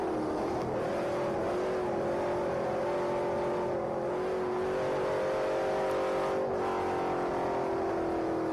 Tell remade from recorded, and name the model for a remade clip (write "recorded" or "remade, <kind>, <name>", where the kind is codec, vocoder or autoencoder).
recorded